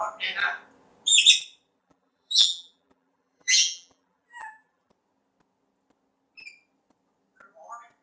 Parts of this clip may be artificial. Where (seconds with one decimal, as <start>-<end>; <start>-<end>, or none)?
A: 1.8-4.9